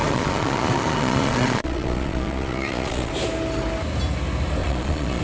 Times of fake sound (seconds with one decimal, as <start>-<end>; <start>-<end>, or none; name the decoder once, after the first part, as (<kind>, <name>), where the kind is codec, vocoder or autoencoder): 0.0-3.1 (vocoder, Vocos); 4.6-5.2